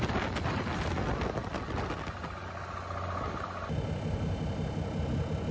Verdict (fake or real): real